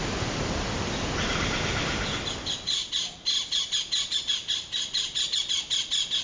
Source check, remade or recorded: recorded